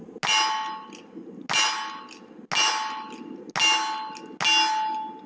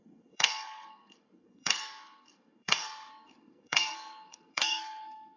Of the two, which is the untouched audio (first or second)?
first